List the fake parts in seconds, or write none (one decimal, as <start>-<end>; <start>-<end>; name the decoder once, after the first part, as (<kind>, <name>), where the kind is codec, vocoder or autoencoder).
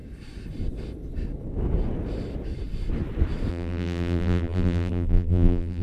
3.5-5.8 (vocoder, BigVGAN v2)